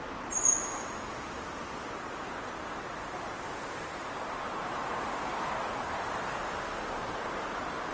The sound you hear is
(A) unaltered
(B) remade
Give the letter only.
A